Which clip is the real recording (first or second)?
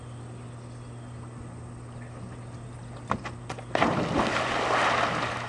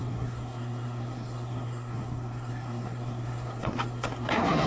first